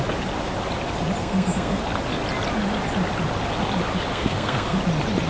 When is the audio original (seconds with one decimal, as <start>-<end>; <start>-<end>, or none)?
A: 0.0-1.2; 1.8-4.1; 4.8-5.3